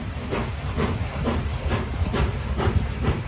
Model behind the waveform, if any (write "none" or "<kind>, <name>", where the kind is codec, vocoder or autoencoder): vocoder, BigVGAN v2